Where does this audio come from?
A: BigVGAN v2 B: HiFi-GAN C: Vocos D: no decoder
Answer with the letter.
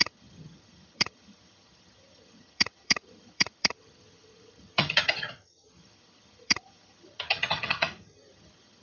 B